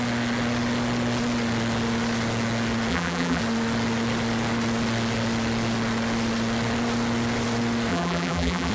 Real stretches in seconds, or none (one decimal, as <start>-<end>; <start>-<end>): 0.0-2.9; 3.4-7.9